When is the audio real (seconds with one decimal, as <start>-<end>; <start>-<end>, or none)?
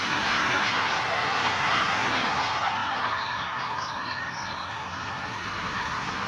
none